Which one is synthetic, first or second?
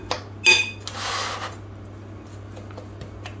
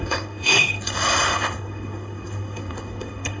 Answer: second